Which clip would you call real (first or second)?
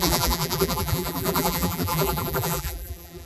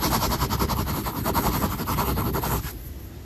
second